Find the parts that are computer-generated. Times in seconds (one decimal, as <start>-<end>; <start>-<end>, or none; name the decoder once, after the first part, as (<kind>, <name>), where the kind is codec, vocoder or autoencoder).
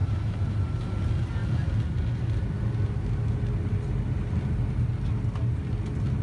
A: 0.0-0.6 (vocoder, BigVGAN v2)